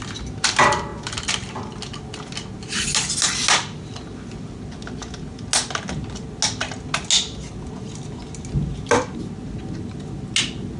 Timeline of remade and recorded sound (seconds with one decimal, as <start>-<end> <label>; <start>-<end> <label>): 0.0-10.8 recorded